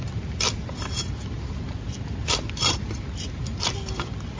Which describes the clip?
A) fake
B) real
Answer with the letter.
B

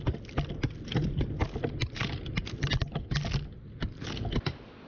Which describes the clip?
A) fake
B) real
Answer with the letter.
B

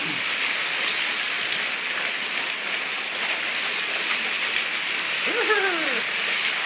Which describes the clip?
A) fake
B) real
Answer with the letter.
B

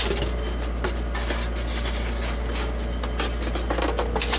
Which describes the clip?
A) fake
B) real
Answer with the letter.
B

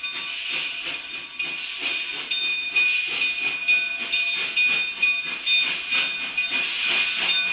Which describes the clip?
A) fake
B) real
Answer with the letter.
B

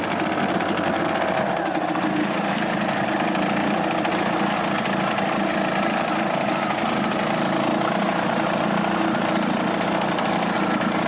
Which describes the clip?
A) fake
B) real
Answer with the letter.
B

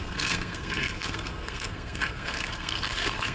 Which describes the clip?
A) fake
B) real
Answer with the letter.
A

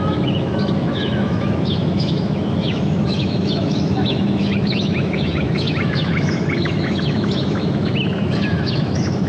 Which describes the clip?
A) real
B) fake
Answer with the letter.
B